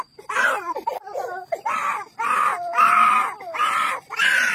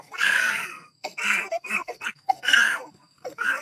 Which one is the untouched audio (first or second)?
first